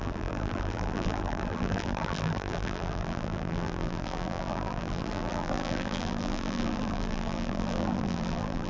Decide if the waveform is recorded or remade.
remade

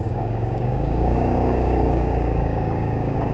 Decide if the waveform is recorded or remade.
remade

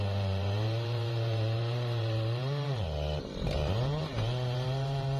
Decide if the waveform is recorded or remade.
remade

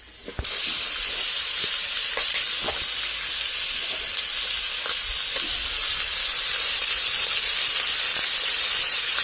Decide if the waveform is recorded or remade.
recorded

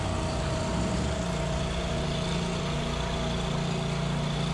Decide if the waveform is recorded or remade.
recorded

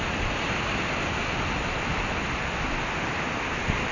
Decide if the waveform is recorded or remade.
recorded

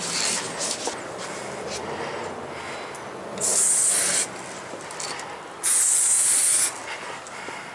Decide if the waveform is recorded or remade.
recorded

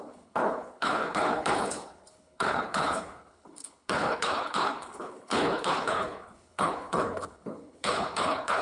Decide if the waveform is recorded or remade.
remade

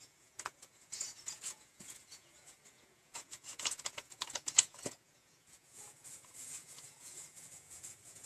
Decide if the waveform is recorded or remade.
remade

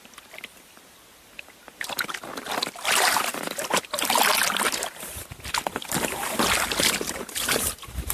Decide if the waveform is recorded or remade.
recorded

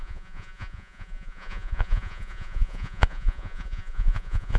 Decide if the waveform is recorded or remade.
remade